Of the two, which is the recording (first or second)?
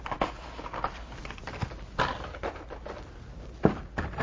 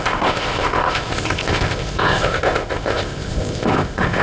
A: first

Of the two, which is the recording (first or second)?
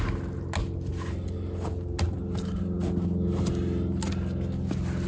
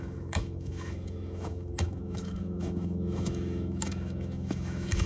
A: first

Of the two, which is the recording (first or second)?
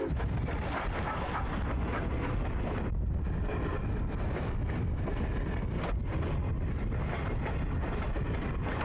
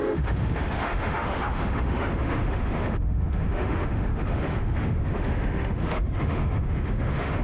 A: first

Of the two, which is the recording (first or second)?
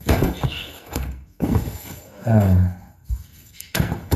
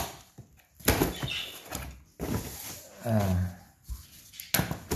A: second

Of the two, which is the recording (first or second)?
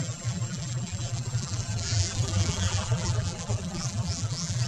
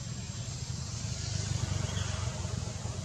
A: second